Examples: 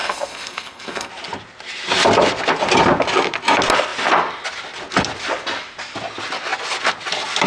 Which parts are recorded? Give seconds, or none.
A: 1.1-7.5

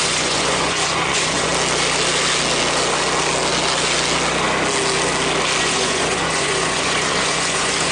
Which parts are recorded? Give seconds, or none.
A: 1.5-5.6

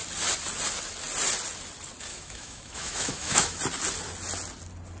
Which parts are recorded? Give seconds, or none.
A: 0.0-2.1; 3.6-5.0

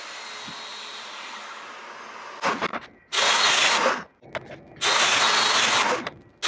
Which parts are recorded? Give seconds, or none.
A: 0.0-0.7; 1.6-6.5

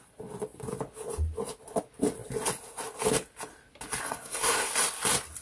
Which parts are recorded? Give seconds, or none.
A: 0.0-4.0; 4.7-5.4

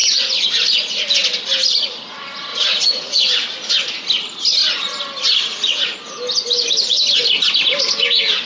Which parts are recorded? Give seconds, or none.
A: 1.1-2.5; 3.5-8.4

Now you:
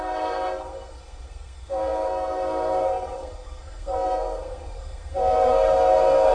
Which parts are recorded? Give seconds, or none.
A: none

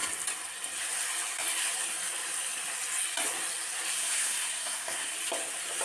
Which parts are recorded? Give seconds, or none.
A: 0.0-4.0; 5.1-5.8